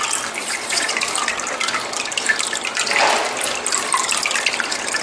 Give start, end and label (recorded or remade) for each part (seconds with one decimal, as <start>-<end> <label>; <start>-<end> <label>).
0.0-0.4 recorded; 0.4-0.9 remade; 0.9-5.0 recorded